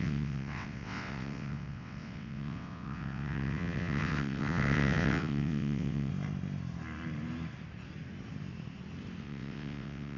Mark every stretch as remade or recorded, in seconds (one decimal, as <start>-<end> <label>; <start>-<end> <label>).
0.0-6.1 remade; 6.1-9.2 recorded; 9.2-10.2 remade